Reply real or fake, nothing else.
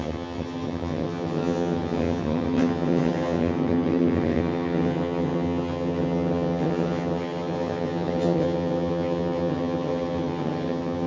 fake